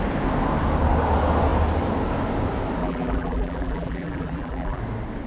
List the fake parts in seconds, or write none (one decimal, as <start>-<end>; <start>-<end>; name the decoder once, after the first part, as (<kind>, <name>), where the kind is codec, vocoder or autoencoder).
2.8-4.8 (vocoder, BigVGAN v2)